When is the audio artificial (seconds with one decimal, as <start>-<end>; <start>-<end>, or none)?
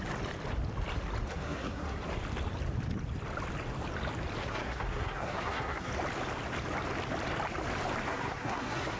1.3-2.0; 4.4-5.9; 8.1-9.0